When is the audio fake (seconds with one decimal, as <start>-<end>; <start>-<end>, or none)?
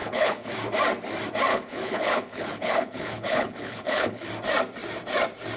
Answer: 0.0-0.5; 1.5-4.3